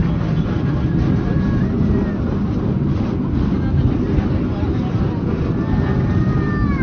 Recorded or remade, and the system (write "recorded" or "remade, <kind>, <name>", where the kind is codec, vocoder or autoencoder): recorded